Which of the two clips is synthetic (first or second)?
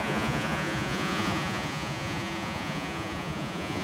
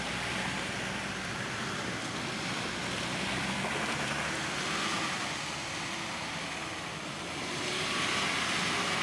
first